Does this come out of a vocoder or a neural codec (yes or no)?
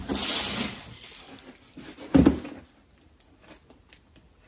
no